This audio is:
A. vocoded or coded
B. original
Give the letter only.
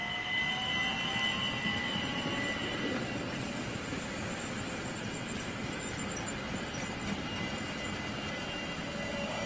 B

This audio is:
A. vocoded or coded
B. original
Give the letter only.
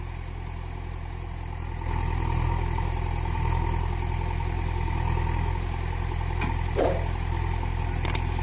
B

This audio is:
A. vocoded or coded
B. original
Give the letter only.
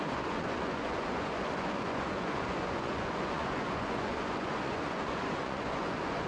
A